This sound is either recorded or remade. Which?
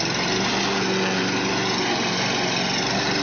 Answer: recorded